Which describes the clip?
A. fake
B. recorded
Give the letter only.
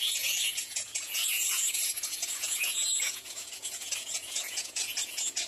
A